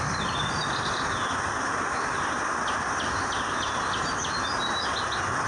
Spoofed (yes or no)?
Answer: no